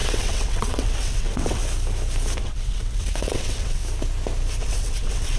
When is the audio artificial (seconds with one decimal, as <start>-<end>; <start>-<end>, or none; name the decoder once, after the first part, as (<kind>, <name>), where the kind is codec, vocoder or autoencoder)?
0.0-1.6 (vocoder, WaveNeXt); 2.4-3.8; 4.6-5.4